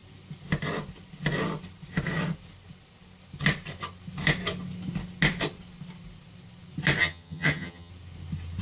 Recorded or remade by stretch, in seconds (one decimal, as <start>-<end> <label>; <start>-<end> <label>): 0.0-7.0 recorded; 7.0-7.9 remade; 7.9-8.6 recorded